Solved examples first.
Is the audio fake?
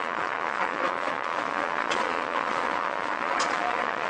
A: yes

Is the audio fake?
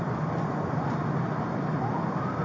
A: no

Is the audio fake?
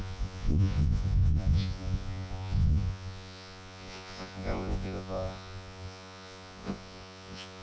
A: yes